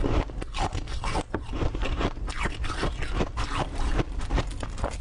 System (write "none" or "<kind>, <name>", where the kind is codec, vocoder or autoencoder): none